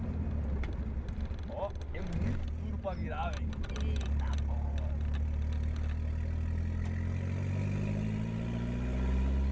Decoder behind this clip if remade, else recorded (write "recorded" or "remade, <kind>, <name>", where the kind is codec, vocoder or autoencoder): recorded